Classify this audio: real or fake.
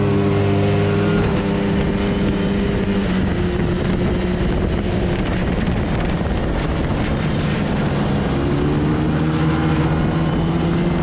real